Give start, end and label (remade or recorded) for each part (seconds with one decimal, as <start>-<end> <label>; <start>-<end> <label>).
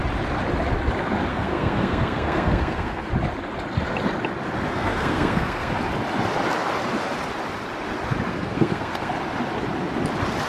0.0-1.3 recorded; 1.3-3.1 remade; 3.1-4.7 recorded; 4.7-5.7 remade; 5.7-8.3 recorded; 8.3-9.1 remade; 9.1-10.5 recorded